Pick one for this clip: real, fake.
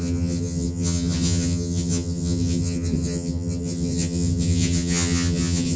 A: fake